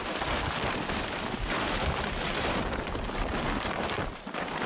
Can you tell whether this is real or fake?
fake